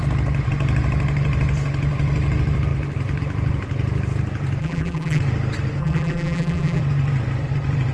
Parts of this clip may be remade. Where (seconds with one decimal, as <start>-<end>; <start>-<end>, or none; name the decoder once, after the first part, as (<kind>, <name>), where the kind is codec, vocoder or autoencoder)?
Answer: 4.6-5.2 (vocoder, BigVGAN v2); 5.8-6.8